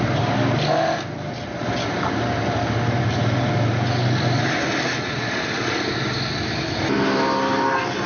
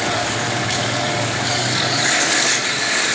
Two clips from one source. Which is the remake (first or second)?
second